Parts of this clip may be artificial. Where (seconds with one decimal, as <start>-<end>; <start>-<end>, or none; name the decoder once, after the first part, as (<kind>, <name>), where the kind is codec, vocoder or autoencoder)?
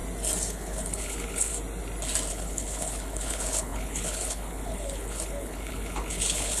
0.5-1.5 (codec, HILCodec); 2.3-6.6